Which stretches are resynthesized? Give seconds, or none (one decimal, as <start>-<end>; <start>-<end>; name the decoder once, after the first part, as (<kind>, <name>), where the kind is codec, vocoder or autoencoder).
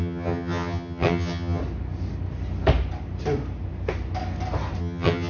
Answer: 0.0-1.6 (vocoder, HiFi-GAN); 4.8-5.3